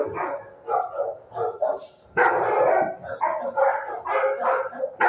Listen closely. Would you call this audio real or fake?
real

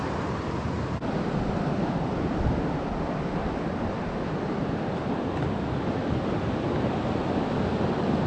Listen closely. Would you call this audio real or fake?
real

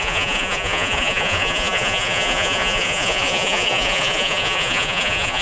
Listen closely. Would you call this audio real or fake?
fake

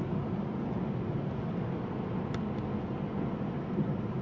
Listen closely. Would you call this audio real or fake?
real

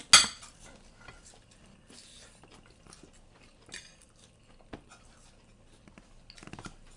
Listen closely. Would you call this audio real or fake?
real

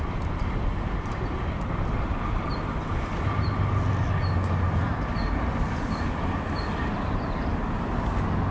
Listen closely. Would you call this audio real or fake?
real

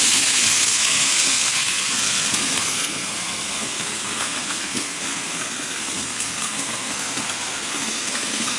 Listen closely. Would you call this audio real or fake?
fake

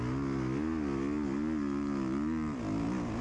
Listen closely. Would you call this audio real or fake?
real